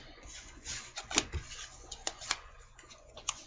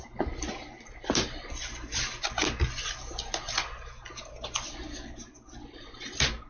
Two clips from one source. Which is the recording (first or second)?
second